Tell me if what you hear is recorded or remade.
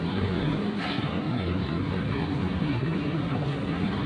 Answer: remade